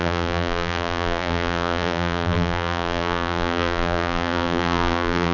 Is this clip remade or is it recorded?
remade